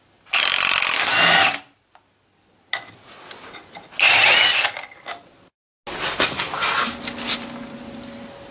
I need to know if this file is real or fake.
real